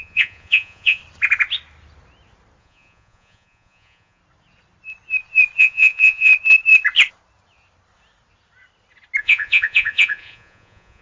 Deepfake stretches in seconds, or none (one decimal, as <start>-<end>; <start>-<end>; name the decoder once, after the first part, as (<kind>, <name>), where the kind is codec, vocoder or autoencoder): 0.0-1.0 (vocoder, Vocos); 2.6-4.2; 5.6-6.3; 9.2-11.0